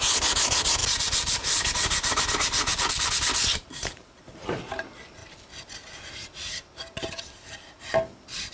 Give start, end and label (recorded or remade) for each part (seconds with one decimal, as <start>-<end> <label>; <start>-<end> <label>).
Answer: 0.0-0.8 recorded; 0.8-1.7 remade; 1.7-2.7 recorded; 2.7-4.2 remade; 4.2-8.5 recorded